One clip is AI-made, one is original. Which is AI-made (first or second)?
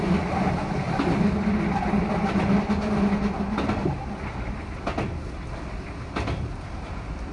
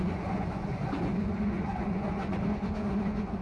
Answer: second